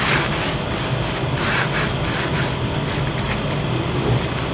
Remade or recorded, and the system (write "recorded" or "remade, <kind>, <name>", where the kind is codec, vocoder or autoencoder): recorded